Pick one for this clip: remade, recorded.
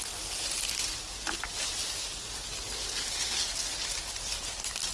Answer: recorded